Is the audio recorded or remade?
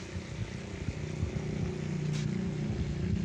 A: recorded